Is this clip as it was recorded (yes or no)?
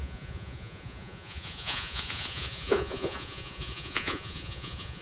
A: no